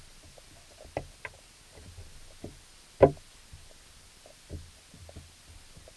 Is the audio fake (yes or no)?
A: no